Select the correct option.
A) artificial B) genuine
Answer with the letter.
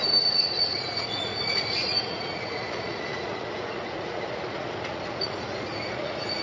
A